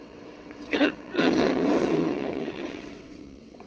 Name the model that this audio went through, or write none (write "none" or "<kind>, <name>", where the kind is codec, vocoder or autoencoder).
vocoder, WaveNeXt